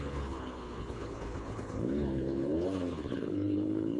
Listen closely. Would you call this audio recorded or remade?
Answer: remade